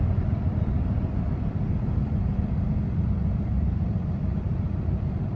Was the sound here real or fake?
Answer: fake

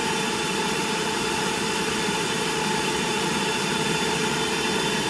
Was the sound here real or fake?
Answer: fake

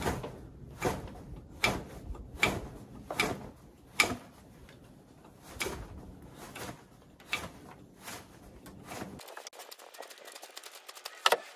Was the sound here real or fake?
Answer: real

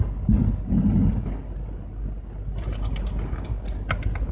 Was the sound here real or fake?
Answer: real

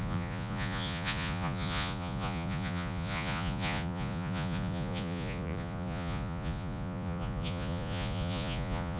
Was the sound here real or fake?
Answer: fake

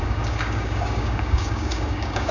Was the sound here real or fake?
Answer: fake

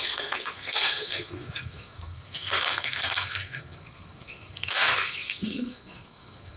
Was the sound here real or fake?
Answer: fake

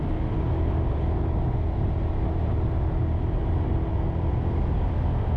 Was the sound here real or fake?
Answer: real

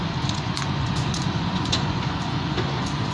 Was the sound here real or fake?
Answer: fake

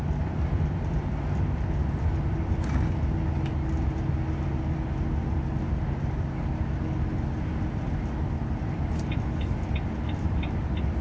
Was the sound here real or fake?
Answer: real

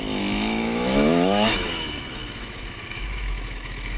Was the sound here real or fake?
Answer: fake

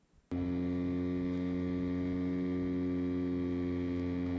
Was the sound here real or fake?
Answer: real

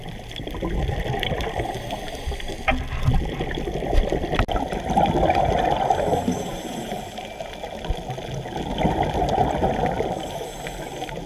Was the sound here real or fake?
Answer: real